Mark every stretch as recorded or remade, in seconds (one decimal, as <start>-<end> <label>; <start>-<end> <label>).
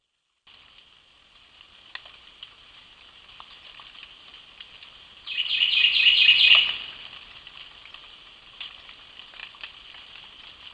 0.0-10.7 recorded